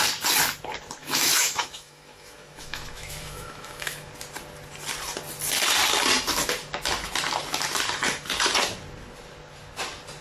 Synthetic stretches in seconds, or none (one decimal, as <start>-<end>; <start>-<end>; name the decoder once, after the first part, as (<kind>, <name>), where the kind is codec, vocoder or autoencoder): 1.0-4.1 (autoencoder, DAC-VAE)